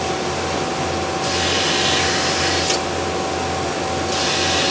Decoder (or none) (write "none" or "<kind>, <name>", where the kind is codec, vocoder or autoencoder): none